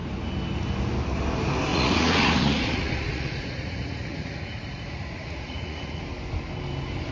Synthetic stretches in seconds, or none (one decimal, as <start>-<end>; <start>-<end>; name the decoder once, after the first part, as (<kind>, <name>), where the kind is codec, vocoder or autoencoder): 1.7-6.0 (vocoder, Vocos)